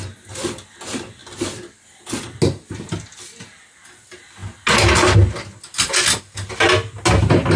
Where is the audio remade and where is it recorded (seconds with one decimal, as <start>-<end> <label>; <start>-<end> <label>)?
0.0-7.6 recorded

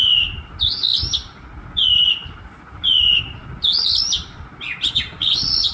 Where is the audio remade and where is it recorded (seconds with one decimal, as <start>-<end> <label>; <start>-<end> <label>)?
0.0-5.7 recorded